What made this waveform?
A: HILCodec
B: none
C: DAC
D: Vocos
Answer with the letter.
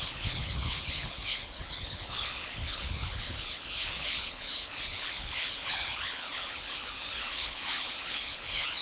A